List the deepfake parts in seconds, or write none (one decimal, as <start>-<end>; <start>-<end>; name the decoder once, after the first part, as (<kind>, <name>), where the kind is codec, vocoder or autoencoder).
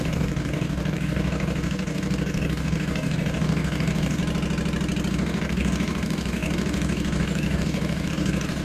0.0-4.2 (codec, DAC); 5.1-8.6